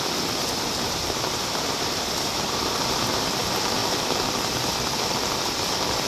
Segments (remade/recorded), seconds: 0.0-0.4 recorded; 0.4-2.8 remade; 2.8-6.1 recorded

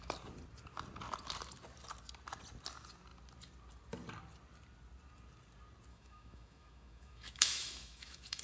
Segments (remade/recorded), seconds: 0.0-5.9 recorded; 5.9-8.4 remade

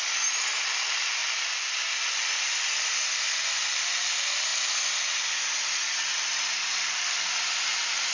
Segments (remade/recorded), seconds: 0.0-6.6 recorded; 6.6-7.3 remade; 7.3-8.1 recorded

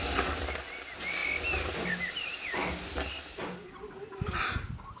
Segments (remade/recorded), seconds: 0.0-5.0 recorded

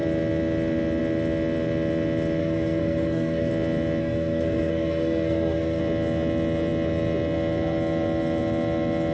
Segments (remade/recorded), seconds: 0.0-2.4 recorded; 2.4-3.5 remade; 3.5-4.0 recorded; 4.0-5.8 remade; 5.8-9.1 recorded